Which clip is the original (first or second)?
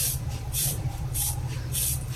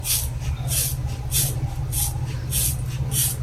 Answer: second